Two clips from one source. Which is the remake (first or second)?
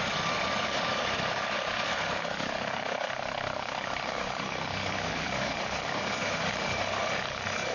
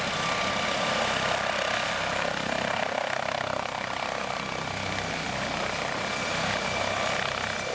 first